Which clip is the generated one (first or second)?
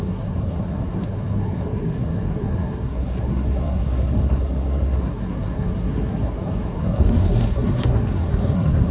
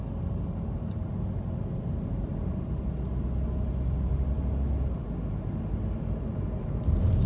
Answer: first